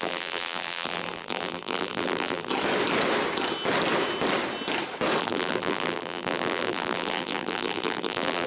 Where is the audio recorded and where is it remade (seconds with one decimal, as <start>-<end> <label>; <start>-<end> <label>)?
0.0-2.5 remade; 2.5-5.2 recorded; 5.2-8.5 remade